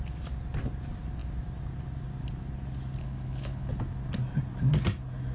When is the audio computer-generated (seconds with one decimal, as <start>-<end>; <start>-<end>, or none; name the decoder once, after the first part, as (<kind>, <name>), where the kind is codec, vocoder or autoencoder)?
3.0-3.7 (codec, HILCodec)